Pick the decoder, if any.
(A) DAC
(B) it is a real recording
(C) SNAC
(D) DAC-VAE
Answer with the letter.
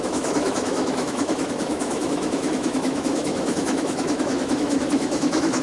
D